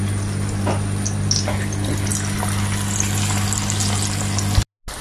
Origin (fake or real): real